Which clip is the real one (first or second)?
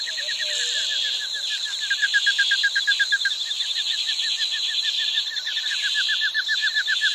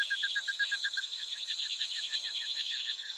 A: first